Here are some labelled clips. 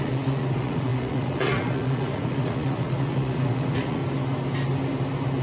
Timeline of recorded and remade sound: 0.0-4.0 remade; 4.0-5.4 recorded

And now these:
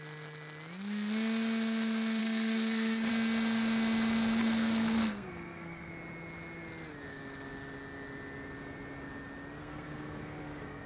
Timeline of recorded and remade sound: 0.0-2.2 recorded; 2.2-3.1 remade; 3.1-4.4 recorded; 4.4-5.9 remade; 5.9-9.6 recorded; 9.6-10.9 remade

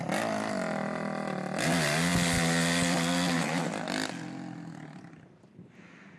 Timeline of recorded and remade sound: 0.0-6.2 recorded

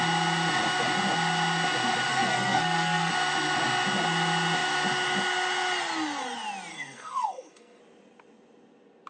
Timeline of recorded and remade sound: 0.0-2.1 recorded; 2.1-3.1 remade; 3.1-6.7 recorded; 6.7-7.8 remade; 7.8-9.1 recorded